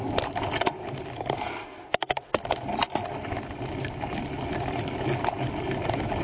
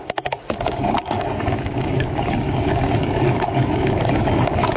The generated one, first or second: second